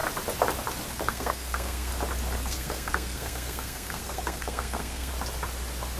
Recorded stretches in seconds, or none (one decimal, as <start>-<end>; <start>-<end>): 0.0-0.9; 1.9-2.4; 5.1-6.0